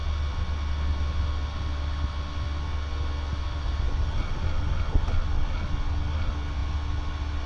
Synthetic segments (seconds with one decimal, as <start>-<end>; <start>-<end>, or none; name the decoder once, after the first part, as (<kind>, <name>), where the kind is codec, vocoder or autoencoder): 3.3-4.0 (vocoder, BigVGAN v2)